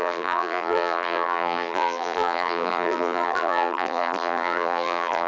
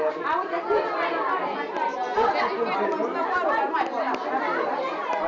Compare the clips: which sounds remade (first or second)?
first